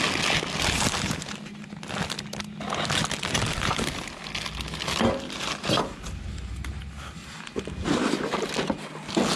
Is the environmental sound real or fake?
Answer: real